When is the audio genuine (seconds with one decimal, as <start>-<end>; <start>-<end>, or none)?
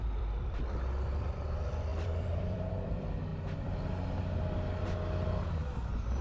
3.3-4.8